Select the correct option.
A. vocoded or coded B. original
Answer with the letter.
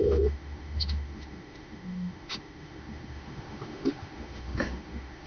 A